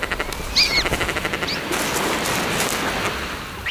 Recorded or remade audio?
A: recorded